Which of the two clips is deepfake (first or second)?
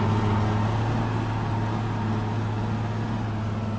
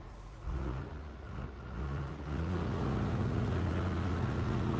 second